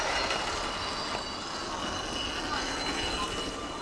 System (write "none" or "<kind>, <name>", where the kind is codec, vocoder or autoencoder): none